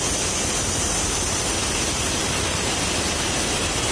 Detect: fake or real real